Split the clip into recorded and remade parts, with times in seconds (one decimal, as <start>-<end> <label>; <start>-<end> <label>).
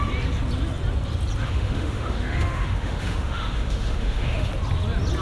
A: 0.0-1.4 recorded; 1.4-4.5 remade; 4.5-5.2 recorded